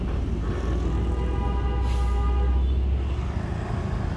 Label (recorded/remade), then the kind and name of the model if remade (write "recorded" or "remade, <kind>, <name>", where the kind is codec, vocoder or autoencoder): recorded